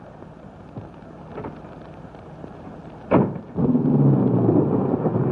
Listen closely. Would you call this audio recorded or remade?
recorded